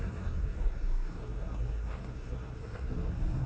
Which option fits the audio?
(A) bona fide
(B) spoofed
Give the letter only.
B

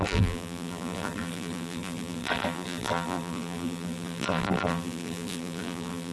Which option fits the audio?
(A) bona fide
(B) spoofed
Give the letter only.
B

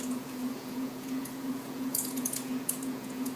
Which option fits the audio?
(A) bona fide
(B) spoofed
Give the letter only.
B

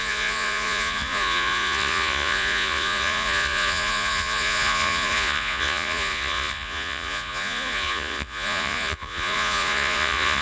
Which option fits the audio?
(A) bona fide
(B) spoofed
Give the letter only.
B